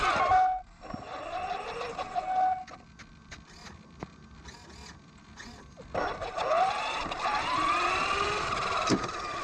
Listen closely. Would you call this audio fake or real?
real